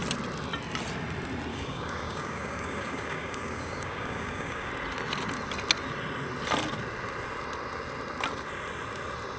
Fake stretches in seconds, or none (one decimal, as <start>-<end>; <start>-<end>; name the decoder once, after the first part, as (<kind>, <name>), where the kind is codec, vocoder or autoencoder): 1.5-4.7 (codec, DAC)